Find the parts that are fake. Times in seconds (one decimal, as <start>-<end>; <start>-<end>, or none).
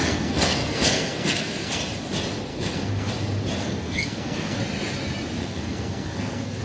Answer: 0.0-1.8; 2.5-3.1; 3.6-4.6; 5.4-6.6